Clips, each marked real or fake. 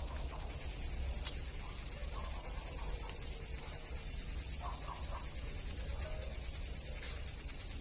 real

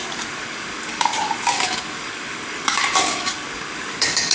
fake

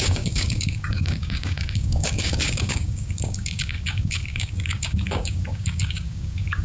fake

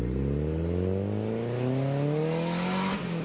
real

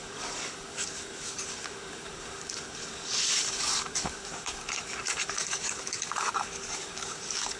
fake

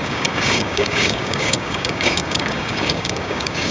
fake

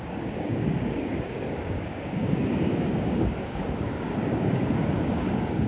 fake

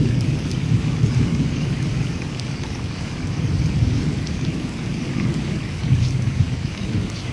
fake